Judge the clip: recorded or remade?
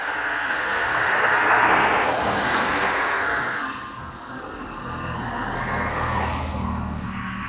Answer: remade